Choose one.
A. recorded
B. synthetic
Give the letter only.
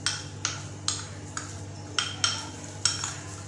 A